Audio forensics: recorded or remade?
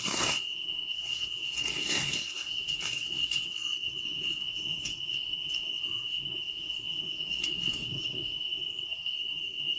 remade